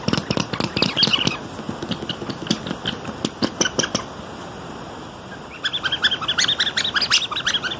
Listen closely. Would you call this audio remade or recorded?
recorded